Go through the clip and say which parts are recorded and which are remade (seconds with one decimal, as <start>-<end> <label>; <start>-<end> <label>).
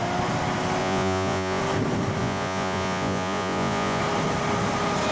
0.0-0.8 recorded; 0.8-1.6 remade; 1.6-2.2 recorded; 2.2-4.0 remade; 4.0-5.1 recorded